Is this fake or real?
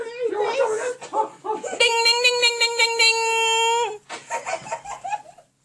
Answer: real